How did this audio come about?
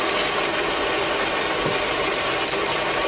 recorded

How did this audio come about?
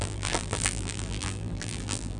remade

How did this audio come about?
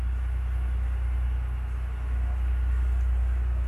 recorded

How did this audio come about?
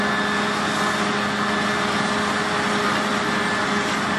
recorded